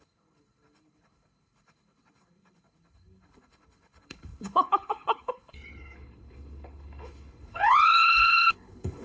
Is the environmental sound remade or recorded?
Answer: remade